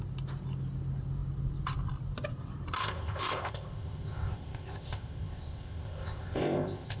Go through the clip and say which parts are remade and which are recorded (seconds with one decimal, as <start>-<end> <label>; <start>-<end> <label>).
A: 0.0-2.8 recorded; 2.8-7.0 remade